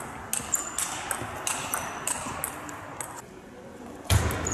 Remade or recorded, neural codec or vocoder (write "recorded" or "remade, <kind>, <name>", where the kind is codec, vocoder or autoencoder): recorded